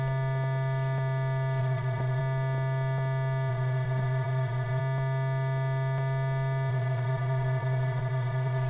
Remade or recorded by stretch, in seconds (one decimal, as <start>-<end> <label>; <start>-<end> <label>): 0.0-1.6 recorded; 1.6-2.2 remade; 2.2-3.5 recorded; 3.5-4.8 remade; 4.8-6.7 recorded; 6.7-8.7 remade